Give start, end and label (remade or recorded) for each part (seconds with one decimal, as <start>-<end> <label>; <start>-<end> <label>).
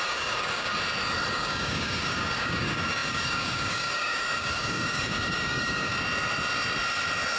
0.0-0.7 remade; 0.7-1.3 recorded; 1.3-5.9 remade; 5.9-7.4 recorded